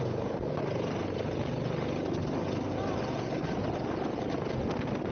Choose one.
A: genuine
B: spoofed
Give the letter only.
A